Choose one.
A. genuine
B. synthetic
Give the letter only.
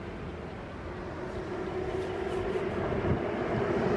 A